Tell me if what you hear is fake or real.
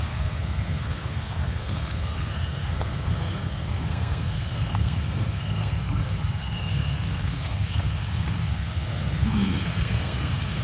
fake